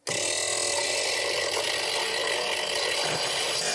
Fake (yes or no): no